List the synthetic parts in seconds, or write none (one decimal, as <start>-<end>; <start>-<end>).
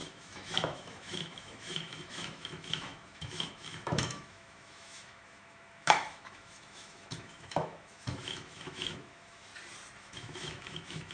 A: 0.0-9.5; 10.0-11.1